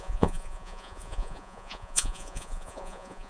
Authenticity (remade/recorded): remade